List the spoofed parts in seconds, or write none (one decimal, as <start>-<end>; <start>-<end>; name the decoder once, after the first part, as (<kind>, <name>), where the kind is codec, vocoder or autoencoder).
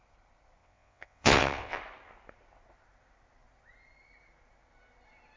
0.6-1.8 (vocoder, WaveNeXt)